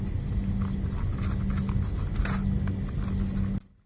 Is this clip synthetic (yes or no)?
no